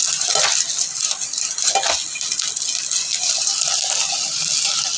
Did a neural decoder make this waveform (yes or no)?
no